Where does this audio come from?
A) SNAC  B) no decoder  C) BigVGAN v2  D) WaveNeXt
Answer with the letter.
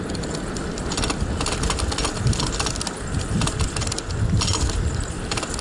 B